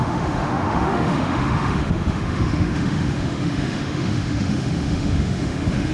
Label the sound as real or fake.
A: fake